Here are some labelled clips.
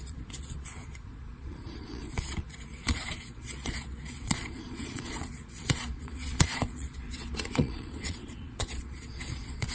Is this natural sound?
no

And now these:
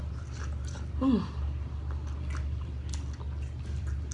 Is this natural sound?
yes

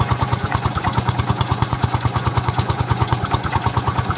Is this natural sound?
no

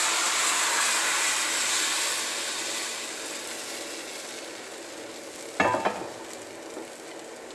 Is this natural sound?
yes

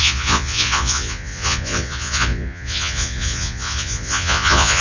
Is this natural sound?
no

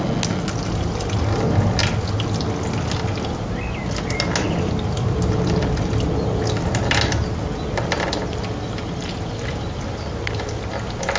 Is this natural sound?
yes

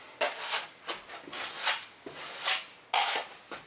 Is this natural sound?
yes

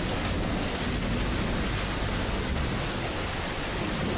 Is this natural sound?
yes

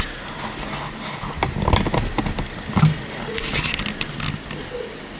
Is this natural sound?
yes